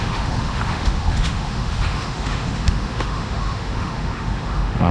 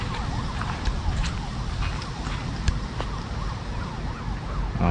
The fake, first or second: first